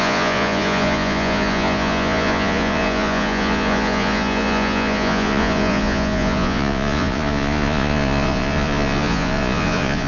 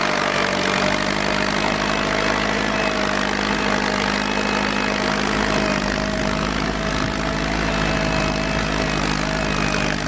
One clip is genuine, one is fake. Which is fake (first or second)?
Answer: first